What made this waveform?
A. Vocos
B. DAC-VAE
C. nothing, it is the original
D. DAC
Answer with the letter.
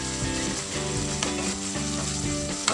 C